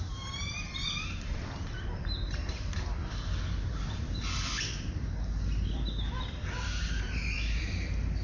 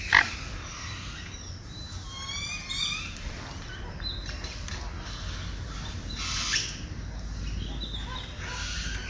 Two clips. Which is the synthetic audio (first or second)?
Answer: first